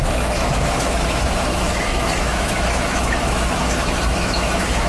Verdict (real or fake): fake